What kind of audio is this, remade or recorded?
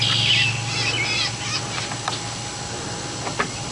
recorded